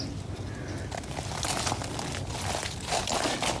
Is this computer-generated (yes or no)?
no